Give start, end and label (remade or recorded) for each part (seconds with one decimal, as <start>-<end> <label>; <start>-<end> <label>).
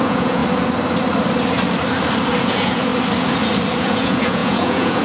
0.0-0.4 remade; 0.4-2.4 recorded; 2.4-2.9 remade; 2.9-3.8 recorded; 3.8-5.0 remade